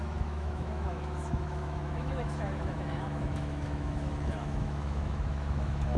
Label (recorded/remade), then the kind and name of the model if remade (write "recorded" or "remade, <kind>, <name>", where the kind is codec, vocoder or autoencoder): remade, autoencoder, DAC-VAE